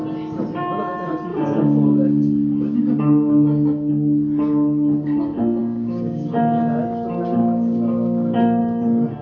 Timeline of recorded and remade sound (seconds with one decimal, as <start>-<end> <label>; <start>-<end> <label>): 0.0-1.3 recorded; 1.3-3.9 remade; 3.9-5.6 recorded; 5.6-6.8 remade; 6.8-7.4 recorded; 7.4-8.6 remade; 8.6-9.2 recorded